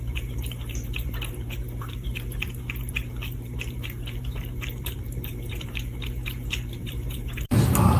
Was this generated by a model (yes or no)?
yes